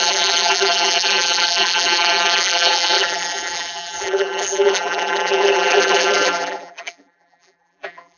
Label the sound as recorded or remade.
remade